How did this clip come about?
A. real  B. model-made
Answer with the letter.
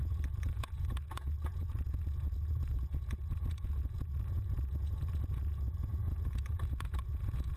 B